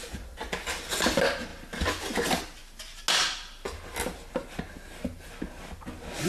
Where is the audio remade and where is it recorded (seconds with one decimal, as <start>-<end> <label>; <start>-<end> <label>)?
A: 0.0-6.3 recorded